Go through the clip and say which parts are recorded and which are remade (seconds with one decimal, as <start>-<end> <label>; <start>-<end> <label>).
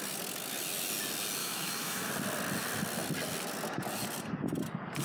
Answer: 0.0-1.4 recorded; 1.4-2.1 remade; 2.1-5.0 recorded